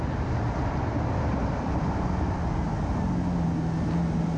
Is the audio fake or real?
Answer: real